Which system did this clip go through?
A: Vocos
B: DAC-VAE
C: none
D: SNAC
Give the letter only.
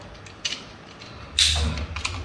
C